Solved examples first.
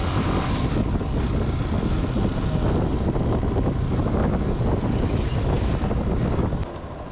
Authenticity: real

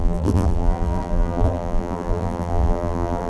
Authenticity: fake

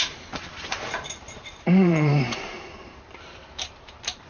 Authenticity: fake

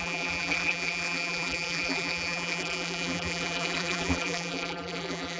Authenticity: fake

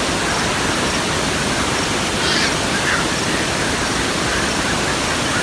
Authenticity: real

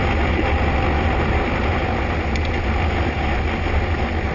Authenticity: real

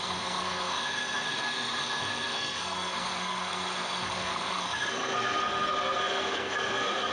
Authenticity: fake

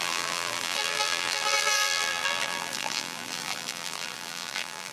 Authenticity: fake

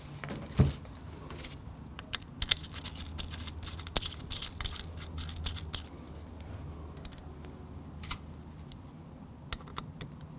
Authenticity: real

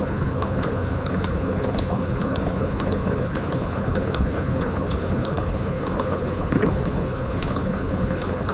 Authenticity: fake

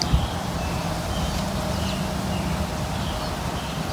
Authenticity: real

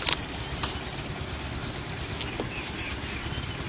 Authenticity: real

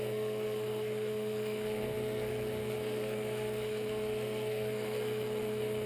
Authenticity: fake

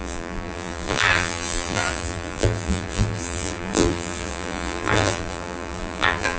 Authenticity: fake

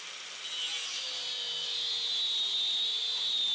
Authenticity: real